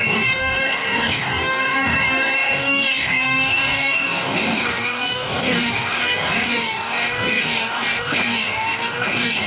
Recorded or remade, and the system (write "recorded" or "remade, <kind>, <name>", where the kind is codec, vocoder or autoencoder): remade, codec, DAC